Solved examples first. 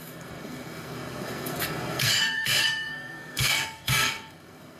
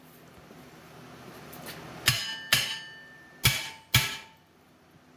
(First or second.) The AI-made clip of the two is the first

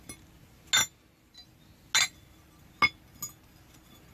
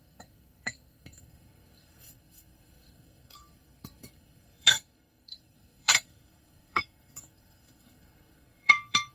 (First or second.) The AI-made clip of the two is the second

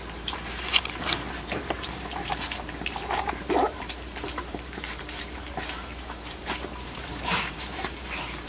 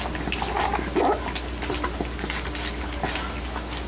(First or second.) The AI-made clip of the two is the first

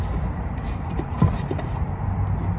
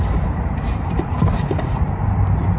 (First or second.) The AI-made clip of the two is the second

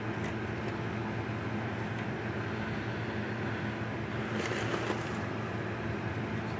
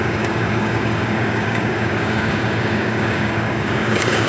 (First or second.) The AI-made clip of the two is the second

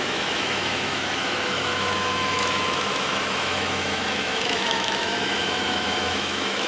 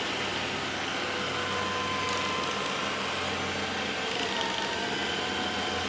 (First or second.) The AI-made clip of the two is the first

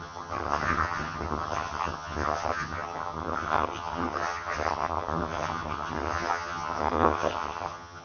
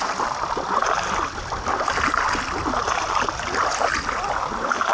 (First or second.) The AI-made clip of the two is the first